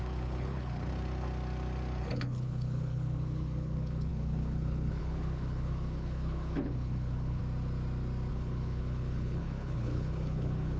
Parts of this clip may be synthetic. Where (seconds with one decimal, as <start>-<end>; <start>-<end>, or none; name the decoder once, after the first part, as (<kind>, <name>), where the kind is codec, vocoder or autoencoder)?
0.0-0.9 (codec, HILCodec); 2.0-7.4; 8.3-10.8